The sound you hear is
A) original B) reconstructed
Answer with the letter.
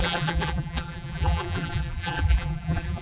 B